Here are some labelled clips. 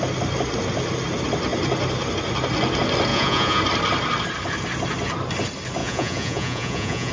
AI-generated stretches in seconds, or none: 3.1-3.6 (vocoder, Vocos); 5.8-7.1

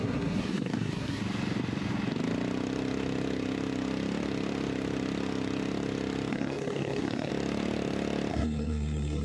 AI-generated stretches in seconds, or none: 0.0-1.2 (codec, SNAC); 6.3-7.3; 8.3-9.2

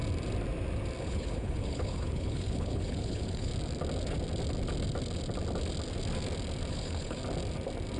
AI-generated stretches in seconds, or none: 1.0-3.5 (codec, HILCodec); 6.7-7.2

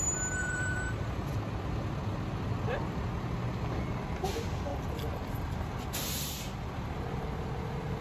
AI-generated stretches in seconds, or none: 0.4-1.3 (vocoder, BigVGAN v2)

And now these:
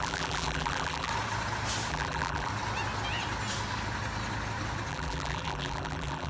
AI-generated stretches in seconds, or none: 0.0-1.1 (vocoder, BigVGAN v2); 1.9-2.5; 4.9-6.3

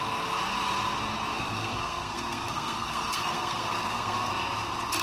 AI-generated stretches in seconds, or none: 1.3-4.3 (codec, SNAC)